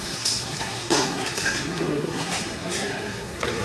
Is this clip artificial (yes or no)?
yes